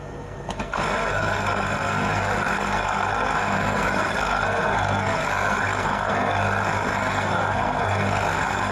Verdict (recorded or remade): remade